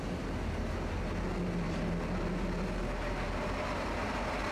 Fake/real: real